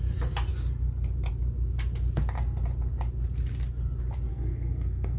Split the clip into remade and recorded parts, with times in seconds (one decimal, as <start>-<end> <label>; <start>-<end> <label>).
0.0-4.3 recorded; 4.3-5.2 remade

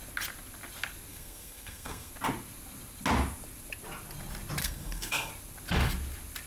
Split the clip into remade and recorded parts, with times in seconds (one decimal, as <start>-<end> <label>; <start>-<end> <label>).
0.0-1.1 recorded; 1.1-2.1 remade; 2.1-4.6 recorded; 4.6-5.3 remade; 5.3-6.5 recorded

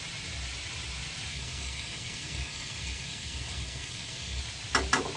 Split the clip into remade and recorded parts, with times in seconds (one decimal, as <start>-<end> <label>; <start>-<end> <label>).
0.0-1.3 recorded; 1.3-4.4 remade; 4.4-5.2 recorded